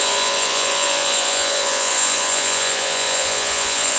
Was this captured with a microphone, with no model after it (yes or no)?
no